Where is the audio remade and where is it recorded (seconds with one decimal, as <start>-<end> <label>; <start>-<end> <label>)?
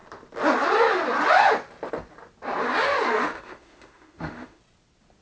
0.0-3.2 recorded; 3.2-4.6 remade; 4.6-5.2 recorded